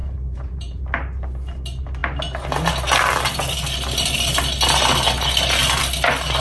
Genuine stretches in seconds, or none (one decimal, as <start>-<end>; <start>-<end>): 0.8-6.4

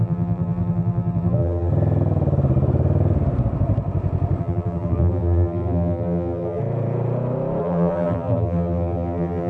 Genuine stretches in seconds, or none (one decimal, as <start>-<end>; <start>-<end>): 1.7-4.4; 6.6-7.6

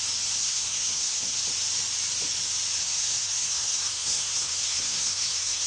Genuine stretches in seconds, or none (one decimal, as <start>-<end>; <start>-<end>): 0.0-0.4; 1.4-2.8

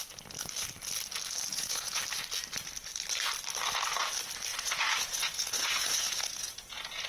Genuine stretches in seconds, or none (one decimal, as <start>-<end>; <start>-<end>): 0.0-1.5; 2.0-4.5

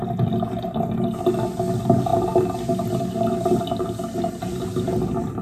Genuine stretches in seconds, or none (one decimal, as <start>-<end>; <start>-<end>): 0.0-5.4

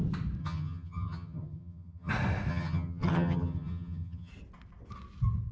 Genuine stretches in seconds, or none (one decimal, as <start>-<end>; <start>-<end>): 0.0-0.4; 2.1-2.5; 4.3-5.5